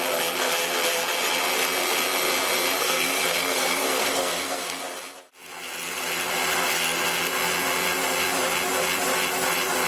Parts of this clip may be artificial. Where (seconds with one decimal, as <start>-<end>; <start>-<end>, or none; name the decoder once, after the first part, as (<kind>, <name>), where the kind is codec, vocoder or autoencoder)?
2.8-4.8 (codec, SNAC)